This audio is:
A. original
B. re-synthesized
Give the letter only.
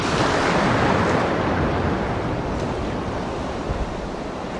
A